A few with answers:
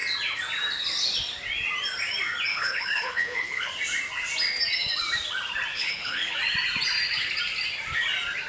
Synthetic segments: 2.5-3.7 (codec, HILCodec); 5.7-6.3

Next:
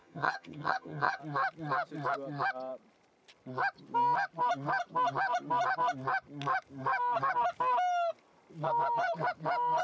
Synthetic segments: 0.0-1.2 (vocoder, HiFi-GAN)